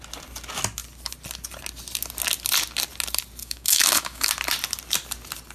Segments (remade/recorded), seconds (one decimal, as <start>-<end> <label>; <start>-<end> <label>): 0.0-3.4 recorded; 3.4-4.3 remade; 4.3-5.5 recorded

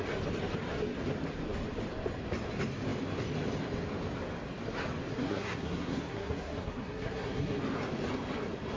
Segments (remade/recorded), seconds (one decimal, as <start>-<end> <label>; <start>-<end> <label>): 0.0-5.1 recorded; 5.1-7.6 remade; 7.6-8.8 recorded

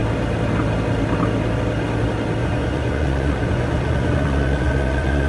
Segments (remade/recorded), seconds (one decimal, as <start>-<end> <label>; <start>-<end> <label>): 0.0-2.4 recorded; 2.4-5.3 remade

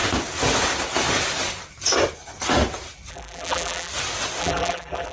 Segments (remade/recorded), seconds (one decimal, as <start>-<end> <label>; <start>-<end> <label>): 0.0-3.1 recorded; 3.1-3.9 remade; 3.9-4.4 recorded; 4.4-5.1 remade

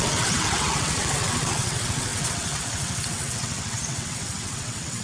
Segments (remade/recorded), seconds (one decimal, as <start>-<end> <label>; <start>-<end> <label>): 0.0-5.0 remade